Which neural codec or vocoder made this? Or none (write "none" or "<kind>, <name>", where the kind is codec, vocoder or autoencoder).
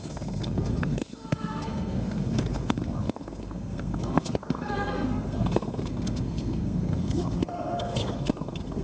codec, SNAC